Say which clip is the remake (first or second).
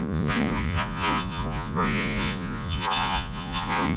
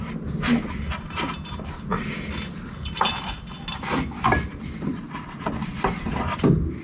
first